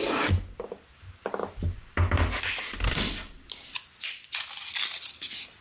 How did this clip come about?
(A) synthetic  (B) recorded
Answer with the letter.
B